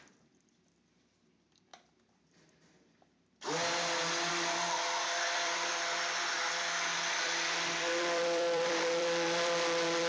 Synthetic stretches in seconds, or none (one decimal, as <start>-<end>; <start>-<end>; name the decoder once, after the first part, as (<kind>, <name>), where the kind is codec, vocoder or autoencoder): 0.0-1.7 (vocoder, BigVGAN v2); 4.3-10.1

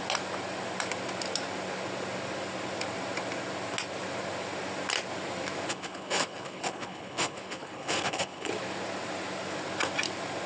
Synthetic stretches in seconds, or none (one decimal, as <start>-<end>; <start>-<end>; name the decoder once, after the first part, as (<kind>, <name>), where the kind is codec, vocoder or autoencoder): 5.7-8.5 (codec, HILCodec)

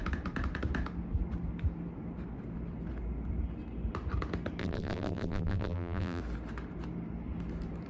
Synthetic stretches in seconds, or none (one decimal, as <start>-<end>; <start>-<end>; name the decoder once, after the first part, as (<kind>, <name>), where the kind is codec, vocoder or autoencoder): 4.6-6.2 (vocoder, BigVGAN v2)

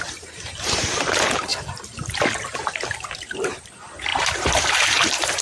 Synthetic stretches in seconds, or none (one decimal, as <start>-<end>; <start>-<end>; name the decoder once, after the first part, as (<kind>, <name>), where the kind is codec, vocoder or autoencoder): 0.0-1.5 (vocoder, BigVGAN v2); 3.1-5.4

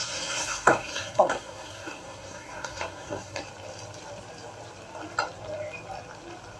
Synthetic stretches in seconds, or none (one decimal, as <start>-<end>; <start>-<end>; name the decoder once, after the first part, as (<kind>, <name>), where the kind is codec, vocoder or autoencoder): 0.0-3.4 (codec, SNAC)

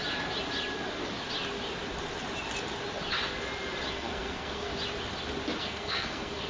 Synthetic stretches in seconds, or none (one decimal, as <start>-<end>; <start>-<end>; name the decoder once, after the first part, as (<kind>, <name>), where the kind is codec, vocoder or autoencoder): 3.9-4.7 (codec, SNAC); 5.6-6.5